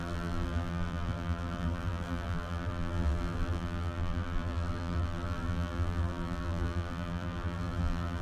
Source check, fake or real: fake